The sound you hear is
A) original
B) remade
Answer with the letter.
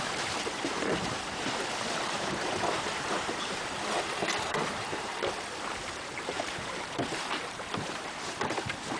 B